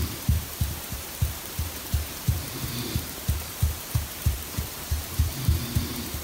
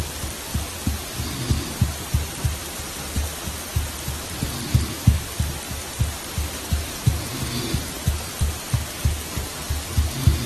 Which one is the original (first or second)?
second